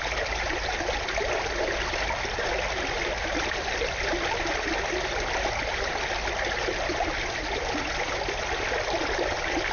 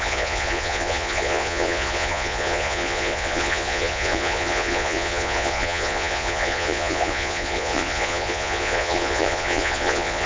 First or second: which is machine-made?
second